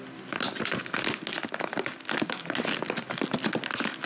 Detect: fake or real real